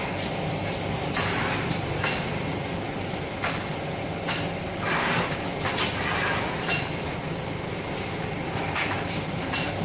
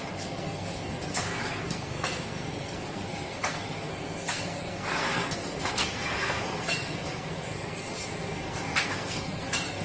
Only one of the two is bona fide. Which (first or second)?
first